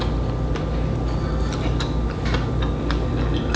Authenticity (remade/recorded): recorded